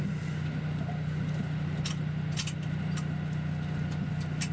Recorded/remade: recorded